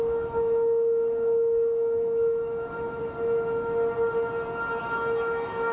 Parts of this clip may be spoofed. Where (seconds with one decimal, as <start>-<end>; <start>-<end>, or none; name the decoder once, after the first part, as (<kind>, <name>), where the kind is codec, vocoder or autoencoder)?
0.0-3.0 (autoencoder, DAC-VAE); 4.8-5.7